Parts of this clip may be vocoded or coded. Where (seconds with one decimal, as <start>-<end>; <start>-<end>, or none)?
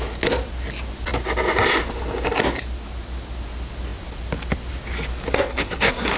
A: 5.5-6.2